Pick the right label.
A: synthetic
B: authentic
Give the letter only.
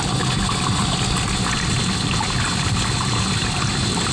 B